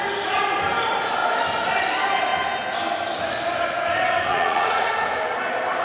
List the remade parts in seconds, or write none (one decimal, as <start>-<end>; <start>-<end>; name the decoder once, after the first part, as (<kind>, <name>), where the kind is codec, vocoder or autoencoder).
4.3-4.9 (vocoder, Vocos)